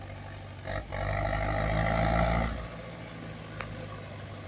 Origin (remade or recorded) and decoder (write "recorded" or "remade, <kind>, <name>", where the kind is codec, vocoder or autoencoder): recorded